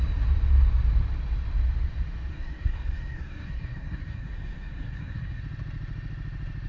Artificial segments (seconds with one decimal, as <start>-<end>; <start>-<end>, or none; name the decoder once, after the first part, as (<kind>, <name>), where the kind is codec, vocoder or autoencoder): 2.3-5.4 (codec, SNAC)